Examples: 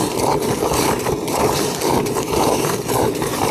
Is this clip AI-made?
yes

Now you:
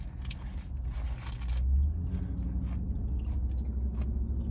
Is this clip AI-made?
no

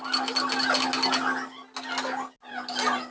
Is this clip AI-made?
no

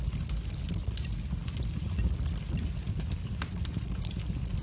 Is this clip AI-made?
no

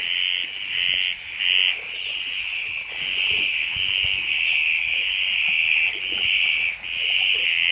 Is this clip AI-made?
no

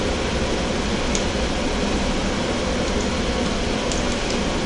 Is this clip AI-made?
no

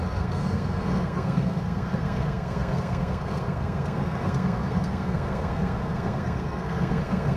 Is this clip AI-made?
yes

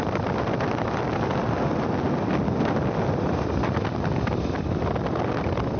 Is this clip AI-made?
no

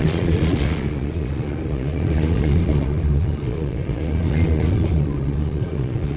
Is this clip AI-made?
yes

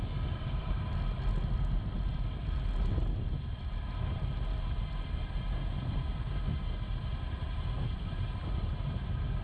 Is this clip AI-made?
no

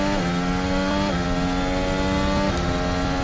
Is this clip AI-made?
no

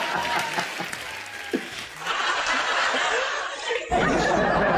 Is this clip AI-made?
no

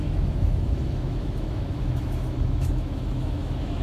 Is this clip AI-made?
yes